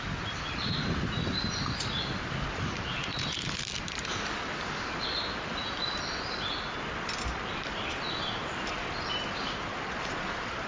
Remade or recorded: recorded